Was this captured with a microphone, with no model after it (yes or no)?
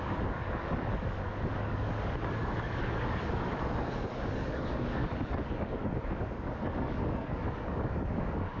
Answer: no